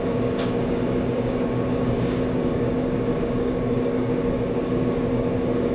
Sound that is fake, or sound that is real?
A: fake